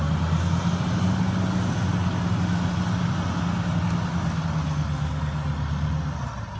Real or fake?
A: real